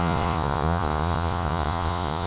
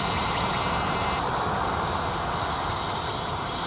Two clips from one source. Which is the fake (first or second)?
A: first